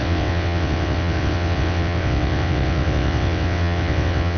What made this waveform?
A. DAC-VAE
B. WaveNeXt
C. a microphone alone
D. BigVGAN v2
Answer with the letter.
B